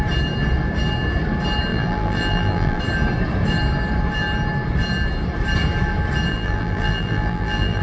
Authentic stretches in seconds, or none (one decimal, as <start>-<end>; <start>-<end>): 0.0-1.7; 2.8-6.3